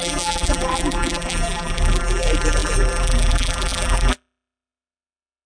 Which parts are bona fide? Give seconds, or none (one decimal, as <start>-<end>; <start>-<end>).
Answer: none